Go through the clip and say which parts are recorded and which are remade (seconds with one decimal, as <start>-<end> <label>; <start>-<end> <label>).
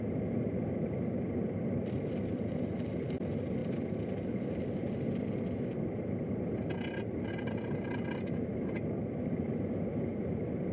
0.0-10.7 recorded